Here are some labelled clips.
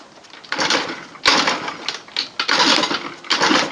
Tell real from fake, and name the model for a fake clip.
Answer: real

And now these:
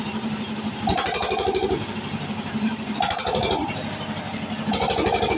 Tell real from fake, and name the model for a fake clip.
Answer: fake, vocoder, BigVGAN v2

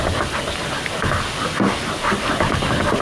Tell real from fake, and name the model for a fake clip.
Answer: real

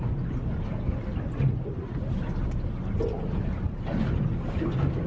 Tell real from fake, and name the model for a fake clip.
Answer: real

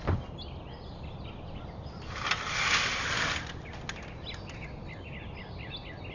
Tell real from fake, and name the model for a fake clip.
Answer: real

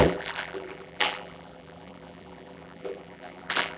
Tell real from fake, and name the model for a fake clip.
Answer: fake, vocoder, BigVGAN v2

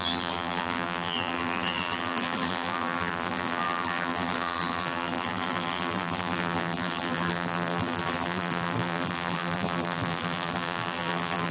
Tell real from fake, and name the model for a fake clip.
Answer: fake, vocoder, BigVGAN v2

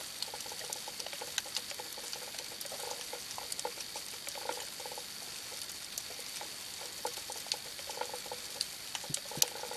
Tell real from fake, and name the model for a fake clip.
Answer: real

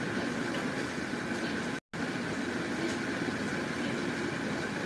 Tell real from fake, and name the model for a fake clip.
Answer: real